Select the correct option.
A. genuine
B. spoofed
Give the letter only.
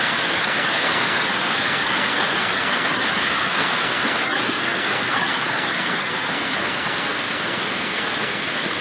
B